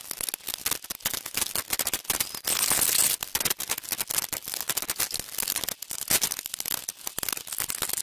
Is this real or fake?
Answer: real